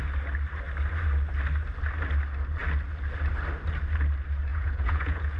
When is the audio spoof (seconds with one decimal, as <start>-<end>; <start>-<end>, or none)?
4.5-5.4